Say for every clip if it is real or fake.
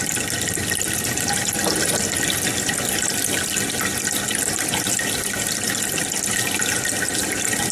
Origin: real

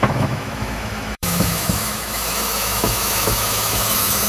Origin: fake